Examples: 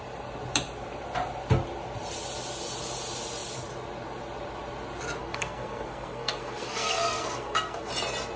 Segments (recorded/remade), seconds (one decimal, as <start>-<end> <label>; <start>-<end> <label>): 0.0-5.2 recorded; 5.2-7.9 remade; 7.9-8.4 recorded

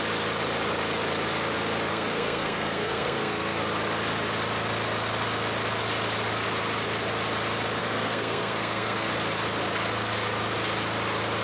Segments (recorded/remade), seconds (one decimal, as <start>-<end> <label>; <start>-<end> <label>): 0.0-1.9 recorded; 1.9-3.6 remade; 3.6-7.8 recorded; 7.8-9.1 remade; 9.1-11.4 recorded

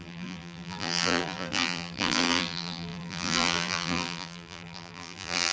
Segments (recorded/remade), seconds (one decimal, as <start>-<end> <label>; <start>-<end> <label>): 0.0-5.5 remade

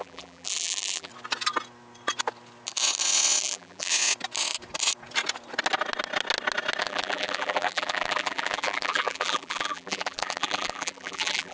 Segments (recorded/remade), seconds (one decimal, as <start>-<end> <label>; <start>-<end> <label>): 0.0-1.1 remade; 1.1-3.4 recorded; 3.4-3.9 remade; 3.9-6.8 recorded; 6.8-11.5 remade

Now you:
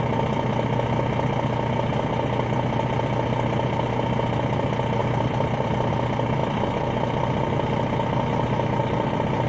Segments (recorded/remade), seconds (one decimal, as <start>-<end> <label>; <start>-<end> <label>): 0.0-5.0 recorded; 5.0-5.9 remade; 5.9-8.8 recorded; 8.8-9.5 remade

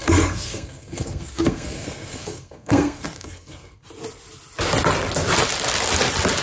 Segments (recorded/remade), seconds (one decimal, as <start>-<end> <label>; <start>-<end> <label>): 0.0-3.8 remade; 3.8-6.4 recorded